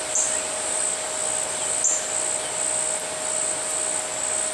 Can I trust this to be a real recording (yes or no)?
yes